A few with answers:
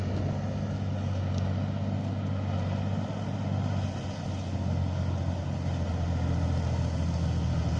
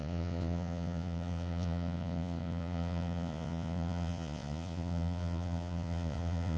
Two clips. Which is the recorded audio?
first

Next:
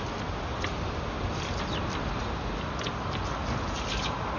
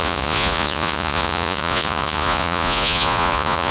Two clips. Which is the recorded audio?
first